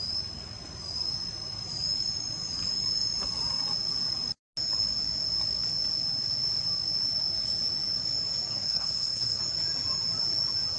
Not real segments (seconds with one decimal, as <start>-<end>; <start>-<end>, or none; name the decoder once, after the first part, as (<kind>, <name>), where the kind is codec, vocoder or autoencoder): 8.5-9.4 (codec, SNAC)